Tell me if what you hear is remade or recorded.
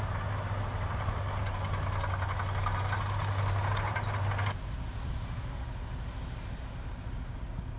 recorded